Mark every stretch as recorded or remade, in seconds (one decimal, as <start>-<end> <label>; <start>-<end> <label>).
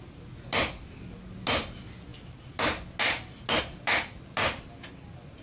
0.0-5.4 recorded